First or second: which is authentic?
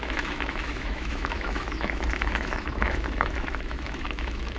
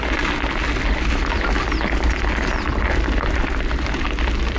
second